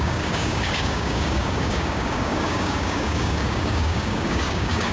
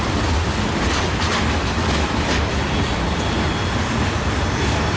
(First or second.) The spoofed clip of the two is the first